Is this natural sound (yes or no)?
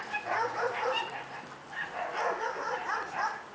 yes